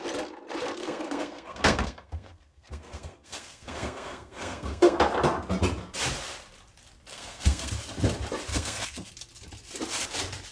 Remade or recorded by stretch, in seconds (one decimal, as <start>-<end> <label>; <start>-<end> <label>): 0.0-0.8 recorded; 0.8-5.0 remade; 5.0-7.1 recorded; 7.1-7.7 remade; 7.7-8.5 recorded; 8.5-9.1 remade; 9.1-10.5 recorded